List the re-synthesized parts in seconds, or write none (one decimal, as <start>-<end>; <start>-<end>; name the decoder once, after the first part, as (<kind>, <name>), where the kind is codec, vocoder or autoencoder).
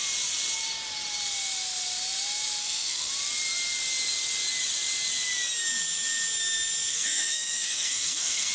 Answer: 2.6-3.1 (codec, SNAC); 6.9-8.5